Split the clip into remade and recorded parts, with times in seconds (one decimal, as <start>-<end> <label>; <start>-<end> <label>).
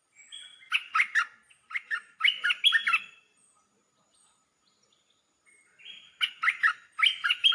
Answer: 0.0-7.5 recorded